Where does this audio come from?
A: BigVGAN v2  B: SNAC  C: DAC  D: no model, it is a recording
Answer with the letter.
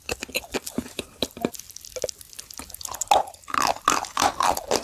D